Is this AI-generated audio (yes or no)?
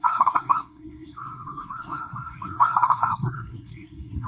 yes